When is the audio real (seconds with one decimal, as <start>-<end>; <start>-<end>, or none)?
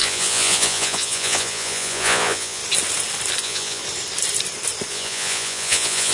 2.6-3.4; 3.8-4.9